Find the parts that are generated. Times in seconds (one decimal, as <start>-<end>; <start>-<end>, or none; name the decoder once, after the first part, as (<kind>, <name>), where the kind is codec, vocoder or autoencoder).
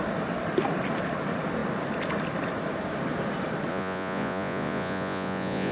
3.7-5.7 (vocoder, Vocos)